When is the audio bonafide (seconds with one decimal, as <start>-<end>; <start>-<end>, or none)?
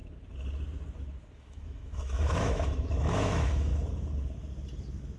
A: 0.0-1.4; 3.7-5.2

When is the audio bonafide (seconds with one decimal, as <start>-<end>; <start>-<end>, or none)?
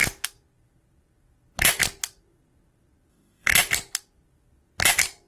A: 0.0-3.1; 3.5-5.3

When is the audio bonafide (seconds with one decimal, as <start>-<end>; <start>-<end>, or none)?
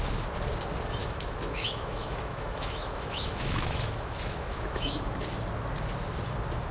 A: 0.0-1.0; 5.0-6.7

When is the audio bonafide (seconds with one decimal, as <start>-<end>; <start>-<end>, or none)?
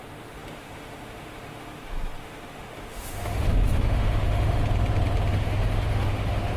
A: 4.6-5.3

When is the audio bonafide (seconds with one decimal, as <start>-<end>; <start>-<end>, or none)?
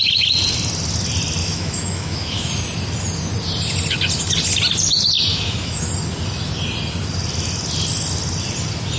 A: 0.0-1.4; 2.5-5.3; 5.9-9.0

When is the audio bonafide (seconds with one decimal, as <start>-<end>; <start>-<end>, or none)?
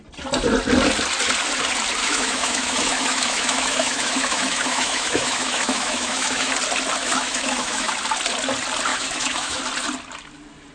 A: 0.0-2.0; 6.5-7.0; 7.9-8.9; 9.6-10.7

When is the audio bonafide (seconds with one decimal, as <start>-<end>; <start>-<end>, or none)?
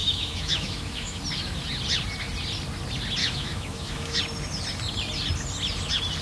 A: 1.2-3.2; 4.2-6.2